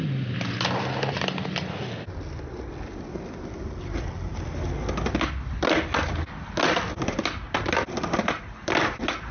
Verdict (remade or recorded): recorded